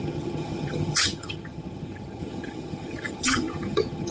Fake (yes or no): yes